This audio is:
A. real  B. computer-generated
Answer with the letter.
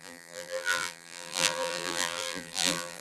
B